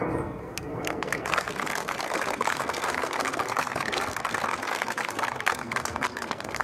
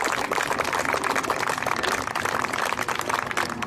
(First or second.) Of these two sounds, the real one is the second